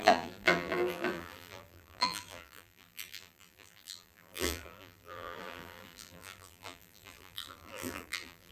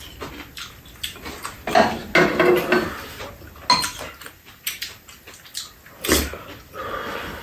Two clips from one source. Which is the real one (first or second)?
second